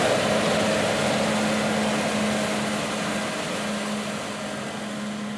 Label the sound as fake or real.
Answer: real